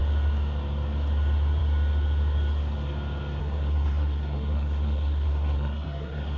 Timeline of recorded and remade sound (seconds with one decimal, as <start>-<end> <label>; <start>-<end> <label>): 0.0-3.4 recorded; 3.4-6.4 remade